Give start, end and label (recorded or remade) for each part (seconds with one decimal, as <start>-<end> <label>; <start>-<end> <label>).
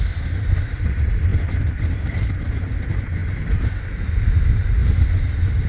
0.0-3.2 recorded; 3.2-4.1 remade; 4.1-5.7 recorded